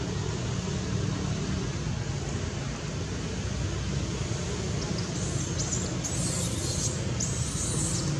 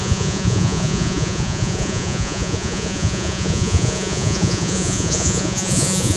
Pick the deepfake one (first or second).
second